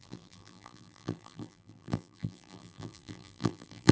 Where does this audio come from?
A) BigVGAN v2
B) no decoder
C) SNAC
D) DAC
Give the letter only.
A